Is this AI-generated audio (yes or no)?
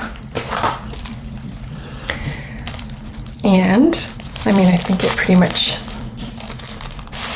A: yes